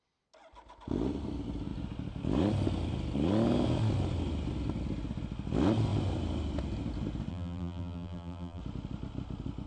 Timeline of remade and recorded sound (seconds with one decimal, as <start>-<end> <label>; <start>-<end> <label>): 0.0-7.3 recorded; 7.3-8.6 remade; 8.6-9.7 recorded